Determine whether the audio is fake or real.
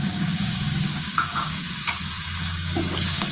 fake